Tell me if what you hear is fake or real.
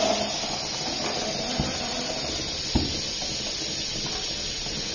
real